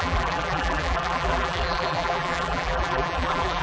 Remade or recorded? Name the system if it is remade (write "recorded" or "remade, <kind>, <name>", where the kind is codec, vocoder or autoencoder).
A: remade, vocoder, BigVGAN v2